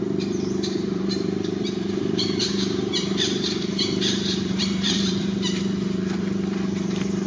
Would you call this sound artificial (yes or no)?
yes